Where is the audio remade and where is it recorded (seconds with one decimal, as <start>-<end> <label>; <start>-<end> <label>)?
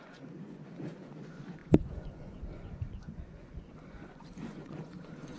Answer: 0.0-5.4 remade